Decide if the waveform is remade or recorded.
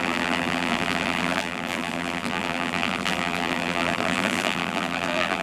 remade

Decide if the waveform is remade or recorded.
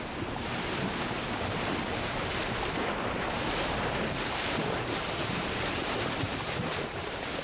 remade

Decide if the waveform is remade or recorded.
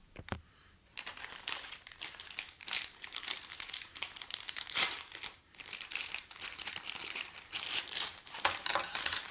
remade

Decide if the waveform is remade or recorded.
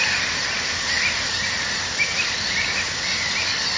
recorded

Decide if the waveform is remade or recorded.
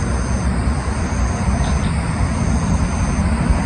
recorded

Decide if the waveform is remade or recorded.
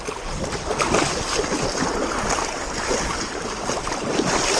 recorded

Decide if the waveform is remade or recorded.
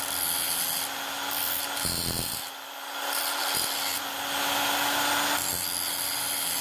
recorded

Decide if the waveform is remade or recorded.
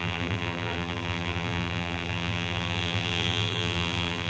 remade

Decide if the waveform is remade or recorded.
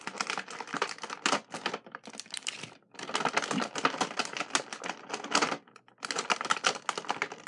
recorded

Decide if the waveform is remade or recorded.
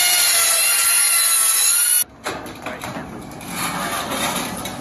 recorded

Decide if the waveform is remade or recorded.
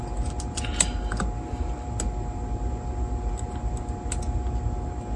recorded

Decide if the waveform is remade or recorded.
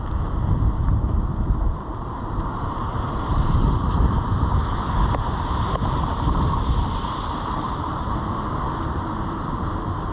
remade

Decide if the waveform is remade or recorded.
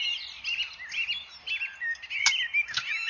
recorded